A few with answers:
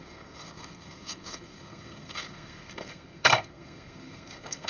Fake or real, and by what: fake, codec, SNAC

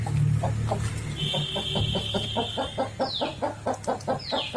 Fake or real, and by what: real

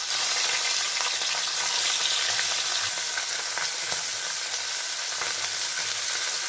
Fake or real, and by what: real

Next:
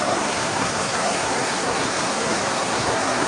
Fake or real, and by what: fake, codec, SNAC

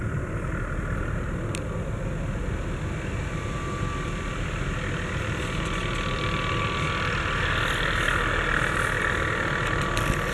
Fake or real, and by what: real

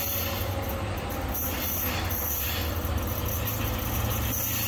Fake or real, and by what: real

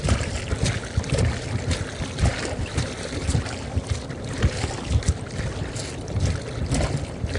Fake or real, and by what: real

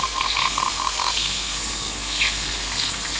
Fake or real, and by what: fake, codec, SNAC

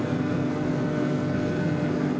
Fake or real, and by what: fake, codec, SNAC